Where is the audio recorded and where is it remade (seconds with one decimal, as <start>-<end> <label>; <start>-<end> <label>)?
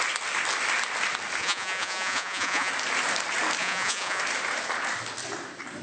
0.0-1.4 recorded; 1.4-2.7 remade; 2.7-3.6 recorded; 3.6-4.2 remade; 4.2-5.8 recorded